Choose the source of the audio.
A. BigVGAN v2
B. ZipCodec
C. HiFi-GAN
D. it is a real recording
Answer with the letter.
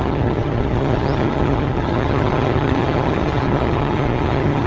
C